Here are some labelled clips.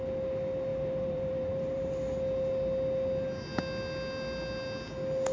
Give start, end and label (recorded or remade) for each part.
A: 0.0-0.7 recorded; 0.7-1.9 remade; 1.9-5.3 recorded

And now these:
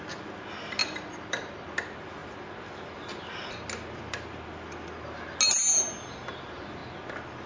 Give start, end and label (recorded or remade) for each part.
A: 0.0-0.8 recorded; 0.8-1.7 remade; 1.7-7.5 recorded